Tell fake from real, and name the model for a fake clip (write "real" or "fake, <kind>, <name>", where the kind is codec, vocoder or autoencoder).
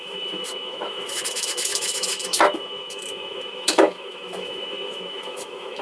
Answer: fake, autoencoder, DAC-VAE